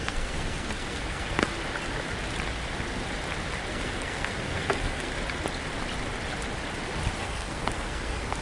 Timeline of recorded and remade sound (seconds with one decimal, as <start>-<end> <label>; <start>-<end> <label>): 0.0-1.5 remade; 1.5-3.7 recorded; 3.7-5.1 remade; 5.1-7.2 recorded; 7.2-8.4 remade